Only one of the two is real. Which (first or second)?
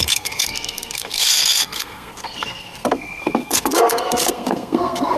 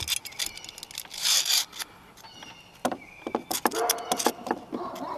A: second